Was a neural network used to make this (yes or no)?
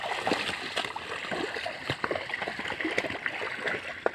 no